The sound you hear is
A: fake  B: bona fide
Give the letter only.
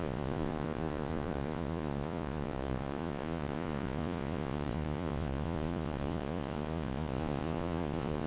A